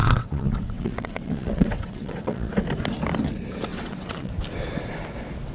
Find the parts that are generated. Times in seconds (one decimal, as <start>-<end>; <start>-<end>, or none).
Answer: 0.0-2.5; 3.7-4.3